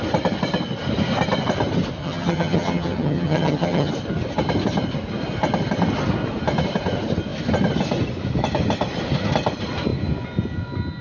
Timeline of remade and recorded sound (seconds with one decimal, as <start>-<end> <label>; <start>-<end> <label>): 0.0-2.0 recorded; 2.0-3.9 remade; 3.9-11.0 recorded

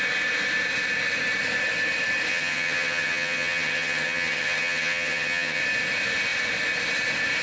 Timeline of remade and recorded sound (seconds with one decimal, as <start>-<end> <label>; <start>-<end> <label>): 0.0-2.3 recorded; 2.3-5.6 remade; 5.6-7.4 recorded

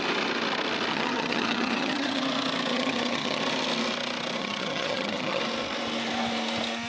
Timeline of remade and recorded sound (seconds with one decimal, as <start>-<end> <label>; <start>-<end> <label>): 0.0-0.9 recorded; 0.9-2.2 remade; 2.2-2.7 recorded; 2.7-3.4 remade; 3.4-4.4 recorded; 4.4-5.4 remade; 5.4-6.9 recorded

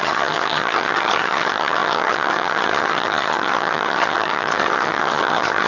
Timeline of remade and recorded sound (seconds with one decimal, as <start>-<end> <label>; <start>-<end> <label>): 0.0-5.7 remade

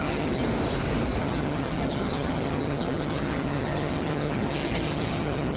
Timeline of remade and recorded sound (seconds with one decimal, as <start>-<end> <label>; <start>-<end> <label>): 0.0-0.4 remade; 0.4-1.2 recorded; 1.2-5.6 remade